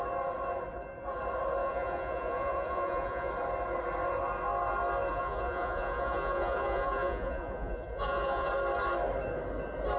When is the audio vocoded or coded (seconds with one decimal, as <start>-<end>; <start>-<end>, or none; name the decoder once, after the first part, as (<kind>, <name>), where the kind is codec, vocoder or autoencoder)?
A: 1.6-3.3 (vocoder, Vocos); 5.1-8.5